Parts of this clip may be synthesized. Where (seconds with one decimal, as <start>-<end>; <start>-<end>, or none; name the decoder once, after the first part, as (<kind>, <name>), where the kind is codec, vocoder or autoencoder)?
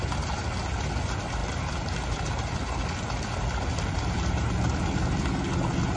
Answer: none